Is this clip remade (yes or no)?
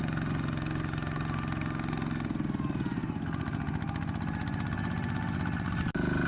no